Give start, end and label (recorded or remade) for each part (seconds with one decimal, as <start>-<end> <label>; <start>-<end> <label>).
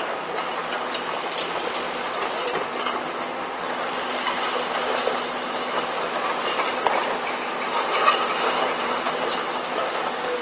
0.0-10.4 recorded